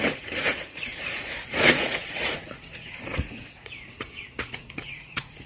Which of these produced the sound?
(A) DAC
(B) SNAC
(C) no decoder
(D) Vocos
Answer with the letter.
D